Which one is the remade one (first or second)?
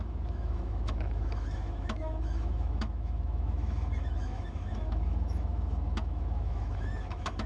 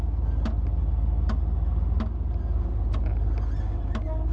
first